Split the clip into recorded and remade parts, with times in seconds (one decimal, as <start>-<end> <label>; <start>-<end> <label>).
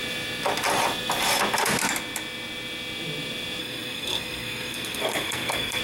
0.0-3.6 recorded; 3.6-5.8 remade